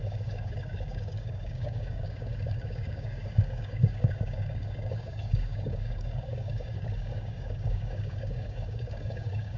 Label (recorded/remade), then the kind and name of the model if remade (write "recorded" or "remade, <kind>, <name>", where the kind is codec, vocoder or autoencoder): remade, codec, DAC